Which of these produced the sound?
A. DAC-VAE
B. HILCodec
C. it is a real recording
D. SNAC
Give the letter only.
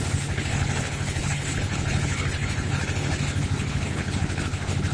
B